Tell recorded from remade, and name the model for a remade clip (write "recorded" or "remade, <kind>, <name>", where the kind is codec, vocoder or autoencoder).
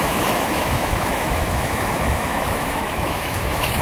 remade, autoencoder, DAC-VAE